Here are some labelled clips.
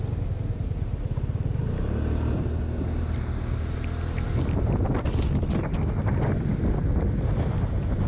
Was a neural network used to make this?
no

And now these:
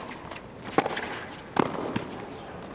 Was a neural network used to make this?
no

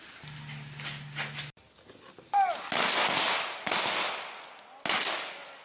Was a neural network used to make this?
no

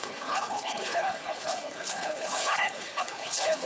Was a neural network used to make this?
yes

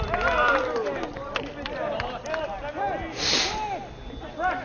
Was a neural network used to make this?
no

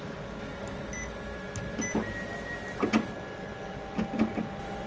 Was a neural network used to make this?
no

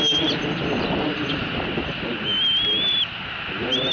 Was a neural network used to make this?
no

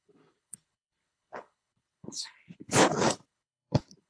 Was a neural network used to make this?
yes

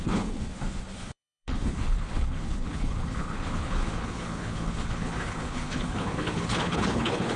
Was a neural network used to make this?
yes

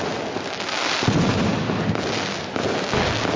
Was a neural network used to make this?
no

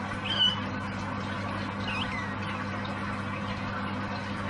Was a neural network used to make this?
no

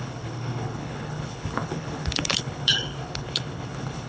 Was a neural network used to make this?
yes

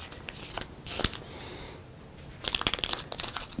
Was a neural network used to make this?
no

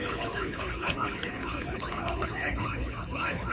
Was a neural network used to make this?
yes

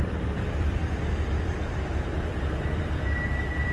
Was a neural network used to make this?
no